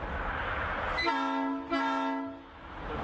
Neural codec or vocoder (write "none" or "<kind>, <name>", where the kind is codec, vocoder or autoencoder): none